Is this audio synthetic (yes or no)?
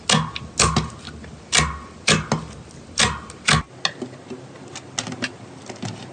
no